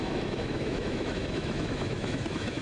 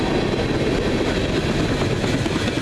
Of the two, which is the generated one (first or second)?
first